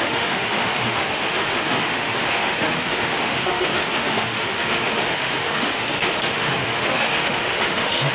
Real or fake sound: fake